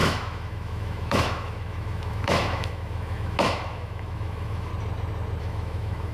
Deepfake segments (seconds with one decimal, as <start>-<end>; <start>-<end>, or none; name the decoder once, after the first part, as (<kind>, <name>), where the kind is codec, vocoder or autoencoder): 0.0-4.7 (autoencoder, DAC-VAE); 5.4-6.1